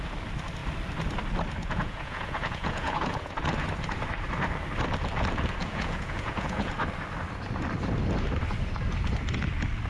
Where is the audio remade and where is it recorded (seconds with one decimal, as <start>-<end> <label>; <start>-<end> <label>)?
0.0-1.6 recorded; 1.6-3.3 remade; 3.3-5.6 recorded; 5.6-6.7 remade; 6.7-9.9 recorded